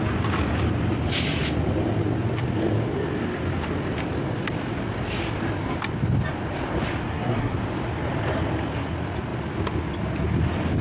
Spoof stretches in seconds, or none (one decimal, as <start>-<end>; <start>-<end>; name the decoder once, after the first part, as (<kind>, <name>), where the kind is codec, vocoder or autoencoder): 7.1-7.6 (codec, SNAC)